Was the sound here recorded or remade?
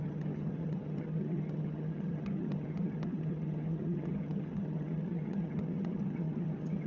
remade